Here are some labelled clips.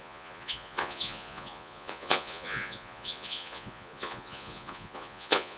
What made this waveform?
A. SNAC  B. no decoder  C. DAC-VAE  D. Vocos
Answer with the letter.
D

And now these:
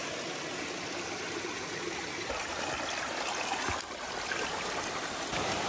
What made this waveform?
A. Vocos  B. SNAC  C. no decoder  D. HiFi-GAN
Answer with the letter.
C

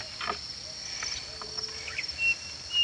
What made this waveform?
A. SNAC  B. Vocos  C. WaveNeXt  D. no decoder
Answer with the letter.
D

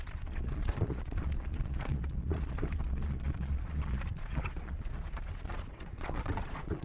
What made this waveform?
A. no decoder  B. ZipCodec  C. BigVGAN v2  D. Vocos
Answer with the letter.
D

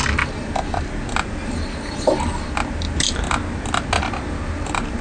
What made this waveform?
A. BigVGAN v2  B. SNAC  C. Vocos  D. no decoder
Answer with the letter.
D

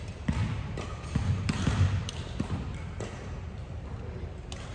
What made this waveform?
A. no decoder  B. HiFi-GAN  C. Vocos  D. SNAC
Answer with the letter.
A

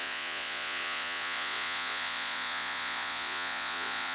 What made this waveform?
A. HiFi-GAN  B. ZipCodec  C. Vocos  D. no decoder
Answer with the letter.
C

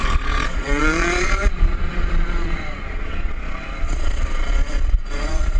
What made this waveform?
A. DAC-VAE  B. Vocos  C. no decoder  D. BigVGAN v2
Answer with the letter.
B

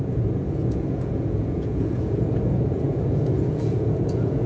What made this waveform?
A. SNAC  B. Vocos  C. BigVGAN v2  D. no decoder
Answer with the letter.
B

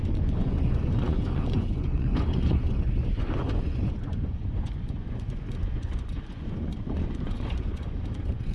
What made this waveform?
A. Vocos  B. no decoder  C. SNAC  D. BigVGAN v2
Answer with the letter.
A